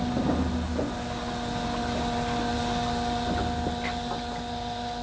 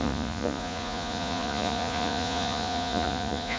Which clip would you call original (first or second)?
first